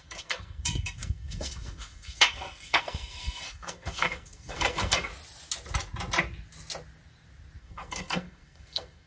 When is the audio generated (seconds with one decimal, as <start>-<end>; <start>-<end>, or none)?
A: 0.0-5.1; 7.6-9.1